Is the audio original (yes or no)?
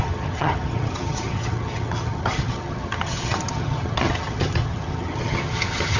no